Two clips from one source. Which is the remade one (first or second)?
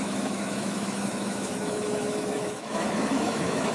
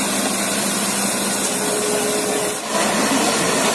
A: first